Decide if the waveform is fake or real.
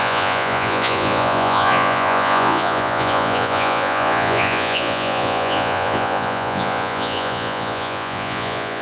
fake